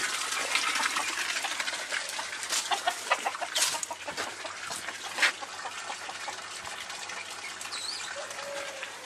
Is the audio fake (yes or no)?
no